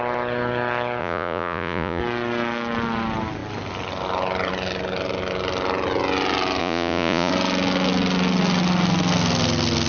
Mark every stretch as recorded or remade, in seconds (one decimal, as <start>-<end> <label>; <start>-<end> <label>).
0.0-1.0 recorded; 1.0-2.0 remade; 2.0-6.6 recorded; 6.6-7.3 remade; 7.3-9.9 recorded